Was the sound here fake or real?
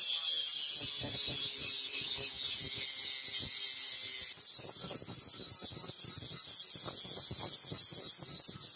real